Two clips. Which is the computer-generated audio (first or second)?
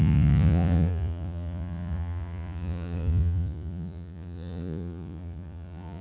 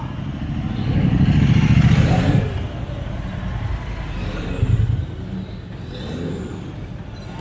first